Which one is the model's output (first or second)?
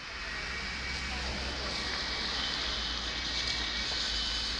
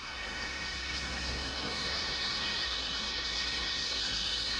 second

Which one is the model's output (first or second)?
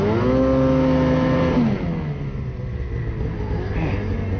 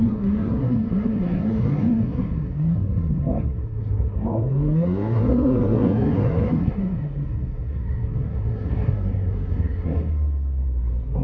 second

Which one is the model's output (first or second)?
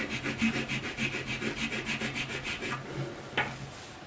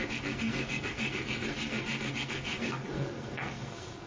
second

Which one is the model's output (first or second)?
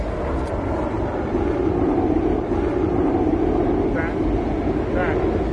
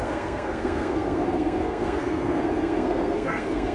second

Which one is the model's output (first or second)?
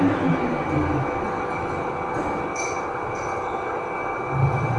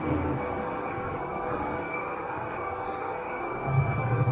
second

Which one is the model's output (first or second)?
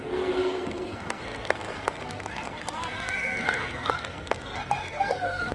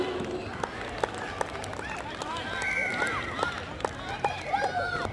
first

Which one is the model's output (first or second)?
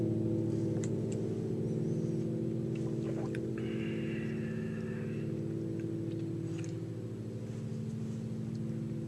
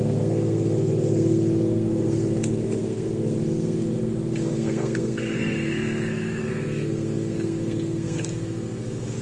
second